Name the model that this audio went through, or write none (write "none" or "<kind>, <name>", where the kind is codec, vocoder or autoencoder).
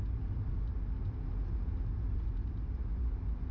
none